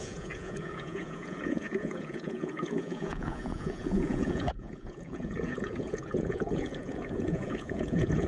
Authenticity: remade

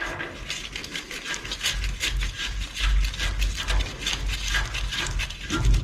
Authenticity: recorded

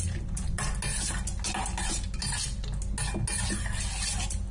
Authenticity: recorded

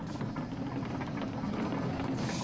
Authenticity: recorded